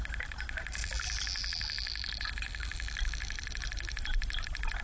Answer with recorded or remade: recorded